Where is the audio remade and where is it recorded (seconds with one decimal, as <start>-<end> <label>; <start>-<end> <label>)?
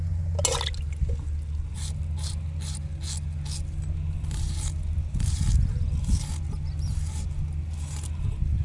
0.0-8.6 recorded